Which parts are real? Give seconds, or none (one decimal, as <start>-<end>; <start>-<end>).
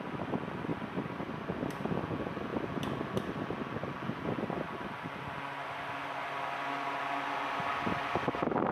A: 0.0-8.7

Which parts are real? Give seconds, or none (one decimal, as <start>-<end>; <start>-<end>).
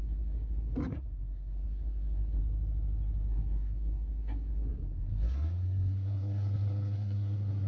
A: 2.4-3.3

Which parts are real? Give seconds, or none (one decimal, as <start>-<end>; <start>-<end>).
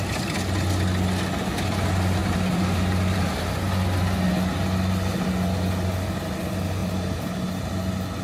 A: 0.0-2.2; 3.5-6.8; 7.7-8.2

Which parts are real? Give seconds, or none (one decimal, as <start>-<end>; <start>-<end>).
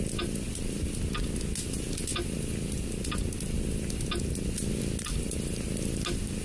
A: 0.0-6.4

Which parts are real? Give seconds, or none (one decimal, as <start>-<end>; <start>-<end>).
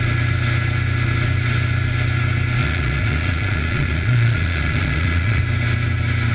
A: 0.0-2.6; 5.4-6.3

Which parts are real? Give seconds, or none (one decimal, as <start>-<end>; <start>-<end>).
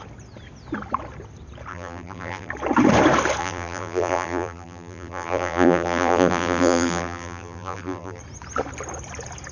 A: 0.0-1.7; 2.5-3.4; 8.2-9.5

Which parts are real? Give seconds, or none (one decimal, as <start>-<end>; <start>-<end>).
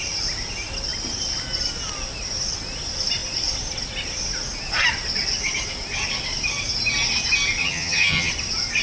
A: 0.0-7.6; 8.3-8.8